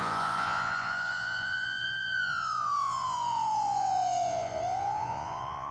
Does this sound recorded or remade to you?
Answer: remade